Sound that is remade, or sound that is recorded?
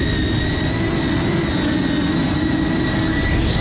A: recorded